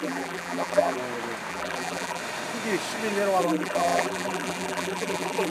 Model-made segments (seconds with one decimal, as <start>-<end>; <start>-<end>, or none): 0.0-1.0; 1.5-2.2; 3.4-5.5